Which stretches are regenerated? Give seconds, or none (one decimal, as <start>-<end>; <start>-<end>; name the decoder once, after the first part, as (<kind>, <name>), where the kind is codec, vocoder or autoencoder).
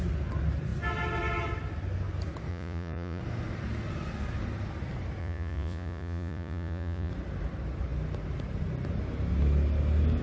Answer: 2.5-3.2 (vocoder, Vocos); 5.2-7.1